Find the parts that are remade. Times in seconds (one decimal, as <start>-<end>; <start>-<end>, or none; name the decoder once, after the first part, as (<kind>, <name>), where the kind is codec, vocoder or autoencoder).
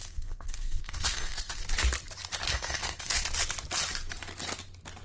0.0-1.6 (codec, SNAC); 2.5-3.2